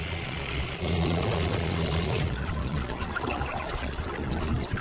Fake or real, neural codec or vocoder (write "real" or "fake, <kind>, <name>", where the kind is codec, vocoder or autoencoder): fake, vocoder, Vocos